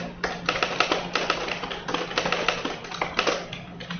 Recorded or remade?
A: recorded